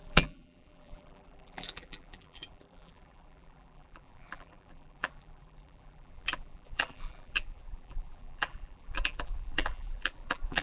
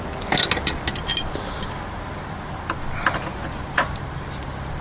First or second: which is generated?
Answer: first